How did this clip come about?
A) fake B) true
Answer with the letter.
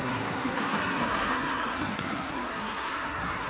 A